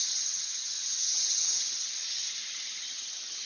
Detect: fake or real fake